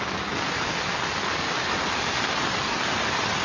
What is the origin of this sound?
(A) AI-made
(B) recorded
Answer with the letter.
B